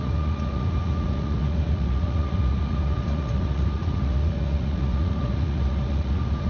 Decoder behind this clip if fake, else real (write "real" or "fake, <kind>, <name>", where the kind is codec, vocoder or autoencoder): fake, vocoder, Vocos